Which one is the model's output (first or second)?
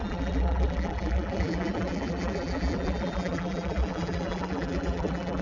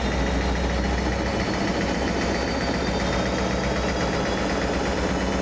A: first